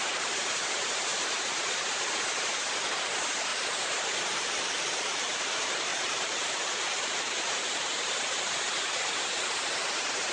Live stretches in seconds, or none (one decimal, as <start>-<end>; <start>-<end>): 0.0-3.5; 5.5-5.9; 7.6-10.3